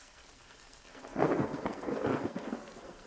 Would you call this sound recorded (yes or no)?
no